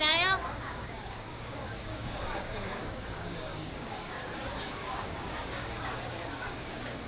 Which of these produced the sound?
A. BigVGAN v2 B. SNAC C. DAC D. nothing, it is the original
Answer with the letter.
C